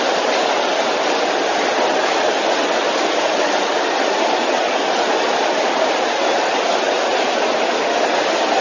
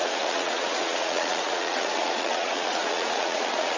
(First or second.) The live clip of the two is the first